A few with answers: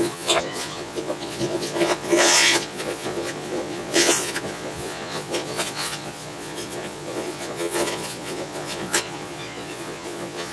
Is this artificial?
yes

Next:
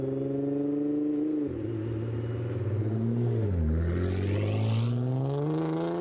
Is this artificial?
no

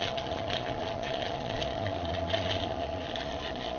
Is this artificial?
yes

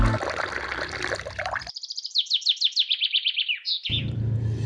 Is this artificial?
no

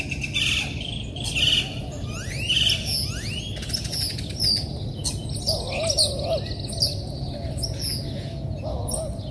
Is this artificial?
no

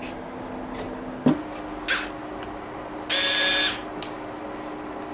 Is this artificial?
no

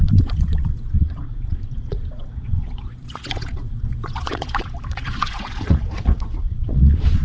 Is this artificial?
yes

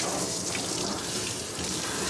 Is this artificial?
no